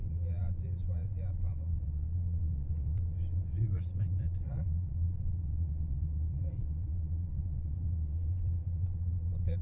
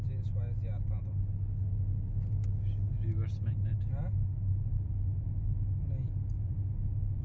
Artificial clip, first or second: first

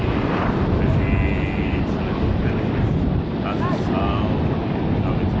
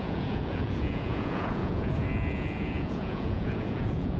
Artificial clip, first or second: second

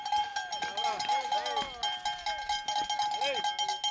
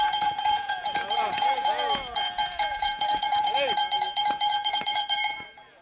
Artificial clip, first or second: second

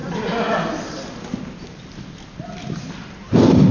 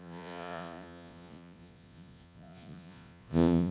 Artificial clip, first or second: second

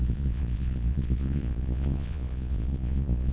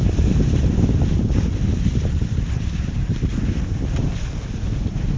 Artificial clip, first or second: first